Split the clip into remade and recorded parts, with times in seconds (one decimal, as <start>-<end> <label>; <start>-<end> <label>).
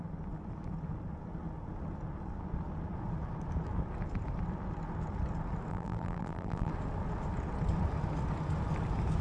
0.0-5.7 recorded; 5.7-6.7 remade; 6.7-9.2 recorded